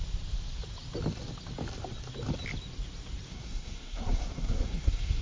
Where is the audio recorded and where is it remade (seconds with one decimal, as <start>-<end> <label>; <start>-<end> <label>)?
0.0-3.3 recorded; 3.3-5.2 remade